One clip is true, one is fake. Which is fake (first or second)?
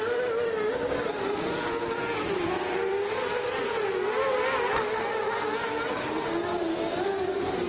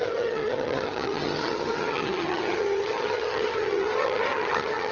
second